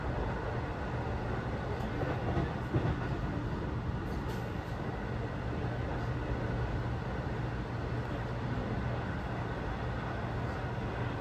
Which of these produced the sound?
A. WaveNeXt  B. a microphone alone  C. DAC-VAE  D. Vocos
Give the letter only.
B